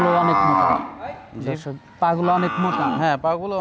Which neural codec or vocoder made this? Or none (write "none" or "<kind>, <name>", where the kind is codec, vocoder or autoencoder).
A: none